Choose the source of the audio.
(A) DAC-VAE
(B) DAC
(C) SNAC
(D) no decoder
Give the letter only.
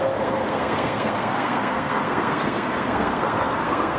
C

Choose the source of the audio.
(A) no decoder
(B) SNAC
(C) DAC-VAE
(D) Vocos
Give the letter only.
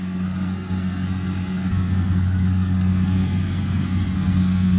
B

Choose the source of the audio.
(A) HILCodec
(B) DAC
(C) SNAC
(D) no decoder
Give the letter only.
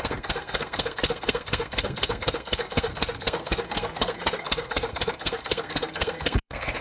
C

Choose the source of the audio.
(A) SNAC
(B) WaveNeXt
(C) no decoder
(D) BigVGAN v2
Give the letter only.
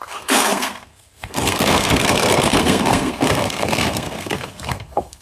A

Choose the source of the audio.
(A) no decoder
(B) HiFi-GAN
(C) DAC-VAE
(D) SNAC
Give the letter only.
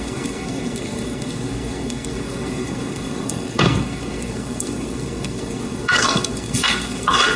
D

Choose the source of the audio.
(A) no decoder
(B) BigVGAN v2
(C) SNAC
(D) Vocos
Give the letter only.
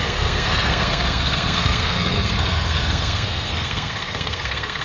C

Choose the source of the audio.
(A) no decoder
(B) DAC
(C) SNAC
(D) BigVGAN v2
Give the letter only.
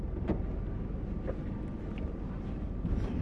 A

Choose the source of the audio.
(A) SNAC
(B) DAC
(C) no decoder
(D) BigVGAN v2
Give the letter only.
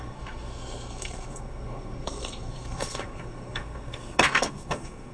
A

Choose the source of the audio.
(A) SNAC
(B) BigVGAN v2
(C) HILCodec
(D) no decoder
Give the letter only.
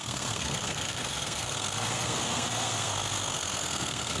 A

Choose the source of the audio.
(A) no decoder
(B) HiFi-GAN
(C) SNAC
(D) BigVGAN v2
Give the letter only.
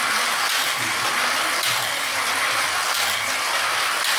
A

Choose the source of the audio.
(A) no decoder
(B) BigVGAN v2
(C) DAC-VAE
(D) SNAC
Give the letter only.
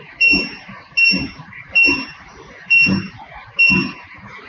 A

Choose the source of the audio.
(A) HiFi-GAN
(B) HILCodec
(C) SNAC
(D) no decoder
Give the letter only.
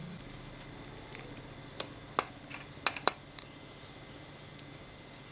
D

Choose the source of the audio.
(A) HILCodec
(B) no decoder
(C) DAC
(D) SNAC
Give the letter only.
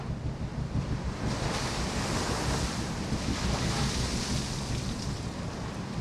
B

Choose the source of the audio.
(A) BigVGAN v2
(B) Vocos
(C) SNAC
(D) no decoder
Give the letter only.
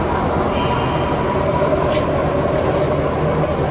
D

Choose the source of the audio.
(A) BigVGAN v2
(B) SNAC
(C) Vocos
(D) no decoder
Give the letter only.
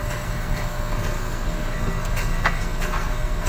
B